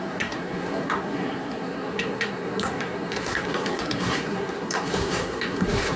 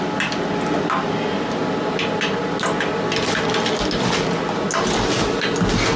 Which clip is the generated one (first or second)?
first